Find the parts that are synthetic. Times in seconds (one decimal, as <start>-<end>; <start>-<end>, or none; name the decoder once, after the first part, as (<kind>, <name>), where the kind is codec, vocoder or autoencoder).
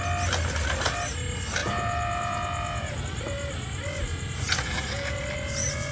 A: 1.6-3.0 (vocoder, Vocos); 4.1-5.2